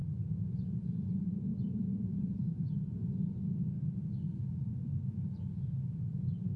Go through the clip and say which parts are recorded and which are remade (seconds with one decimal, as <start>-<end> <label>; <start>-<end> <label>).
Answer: 0.0-3.0 remade; 3.0-4.0 recorded; 4.0-6.6 remade